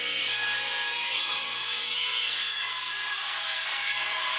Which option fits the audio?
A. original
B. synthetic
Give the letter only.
B